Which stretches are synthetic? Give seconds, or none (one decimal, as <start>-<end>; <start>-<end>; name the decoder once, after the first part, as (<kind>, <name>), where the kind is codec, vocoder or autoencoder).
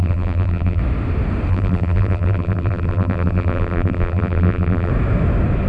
0.0-0.8 (vocoder, BigVGAN v2); 1.5-4.9